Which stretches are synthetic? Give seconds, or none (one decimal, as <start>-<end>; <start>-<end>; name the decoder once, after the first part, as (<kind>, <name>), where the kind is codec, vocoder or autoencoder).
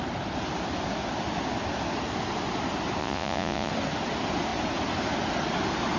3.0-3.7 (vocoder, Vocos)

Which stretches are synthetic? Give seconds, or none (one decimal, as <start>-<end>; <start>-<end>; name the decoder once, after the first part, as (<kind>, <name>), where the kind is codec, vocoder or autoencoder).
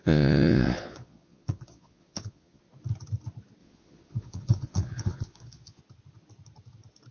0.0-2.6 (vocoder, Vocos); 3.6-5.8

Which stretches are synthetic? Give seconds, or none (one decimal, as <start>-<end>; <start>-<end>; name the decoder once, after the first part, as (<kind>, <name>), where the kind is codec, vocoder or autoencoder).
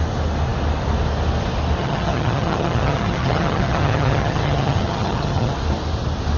1.8-5.5 (vocoder, HiFi-GAN)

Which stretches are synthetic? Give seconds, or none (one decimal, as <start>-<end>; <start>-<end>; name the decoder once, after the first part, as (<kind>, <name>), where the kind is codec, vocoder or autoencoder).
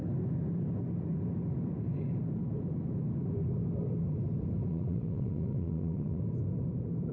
4.7-6.2 (vocoder, Vocos)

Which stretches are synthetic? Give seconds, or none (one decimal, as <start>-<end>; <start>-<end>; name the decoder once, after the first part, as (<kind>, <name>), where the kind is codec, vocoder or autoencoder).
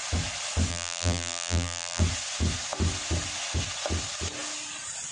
0.7-2.0 (vocoder, BigVGAN v2)